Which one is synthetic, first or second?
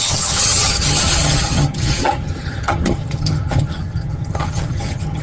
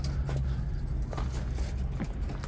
first